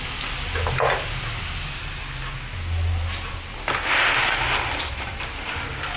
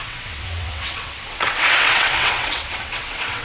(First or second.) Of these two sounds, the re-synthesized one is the second